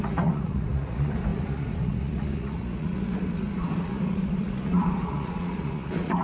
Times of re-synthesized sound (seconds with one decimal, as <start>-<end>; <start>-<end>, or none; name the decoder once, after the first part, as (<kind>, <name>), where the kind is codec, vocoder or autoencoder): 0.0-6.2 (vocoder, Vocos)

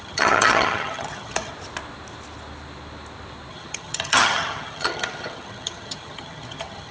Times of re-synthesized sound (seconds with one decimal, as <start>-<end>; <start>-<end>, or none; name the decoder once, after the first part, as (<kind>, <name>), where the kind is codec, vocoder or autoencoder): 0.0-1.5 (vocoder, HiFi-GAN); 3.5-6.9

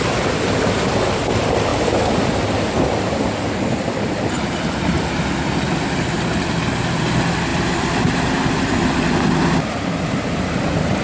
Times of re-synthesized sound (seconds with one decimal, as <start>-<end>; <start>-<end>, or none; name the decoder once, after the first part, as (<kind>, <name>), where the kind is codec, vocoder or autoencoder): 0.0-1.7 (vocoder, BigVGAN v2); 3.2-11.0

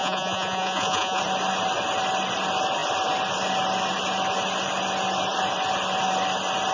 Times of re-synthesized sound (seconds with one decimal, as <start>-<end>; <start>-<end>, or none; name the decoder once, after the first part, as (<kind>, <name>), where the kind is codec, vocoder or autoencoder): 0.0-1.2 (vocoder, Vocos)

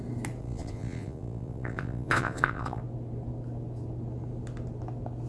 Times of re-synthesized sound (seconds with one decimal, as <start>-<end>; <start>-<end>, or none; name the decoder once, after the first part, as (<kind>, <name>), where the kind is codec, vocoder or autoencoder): 0.4-2.8 (vocoder, Vocos)

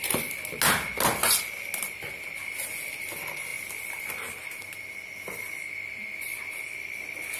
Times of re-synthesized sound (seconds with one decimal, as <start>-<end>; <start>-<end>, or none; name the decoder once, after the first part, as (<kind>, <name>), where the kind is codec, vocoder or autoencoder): none